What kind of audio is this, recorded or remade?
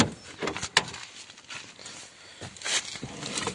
recorded